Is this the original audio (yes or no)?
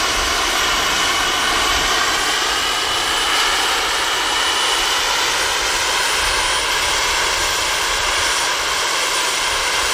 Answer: yes